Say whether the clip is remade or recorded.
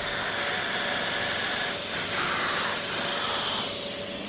recorded